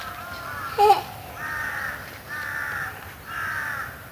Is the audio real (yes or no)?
yes